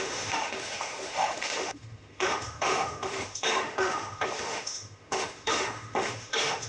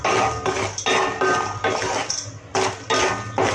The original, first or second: second